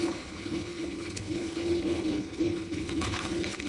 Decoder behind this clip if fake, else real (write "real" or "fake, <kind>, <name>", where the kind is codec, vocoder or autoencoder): fake, codec, HILCodec